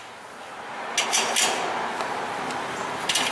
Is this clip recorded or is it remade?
recorded